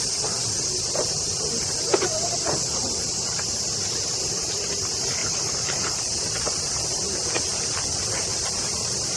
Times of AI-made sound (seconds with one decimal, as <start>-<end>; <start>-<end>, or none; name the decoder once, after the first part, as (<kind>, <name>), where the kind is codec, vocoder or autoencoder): 5.2-6.0 (vocoder, BigVGAN v2)